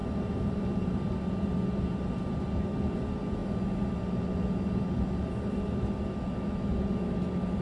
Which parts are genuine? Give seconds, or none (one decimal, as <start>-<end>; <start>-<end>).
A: 0.0-7.6